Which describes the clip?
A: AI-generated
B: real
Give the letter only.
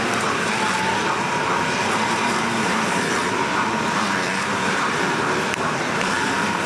A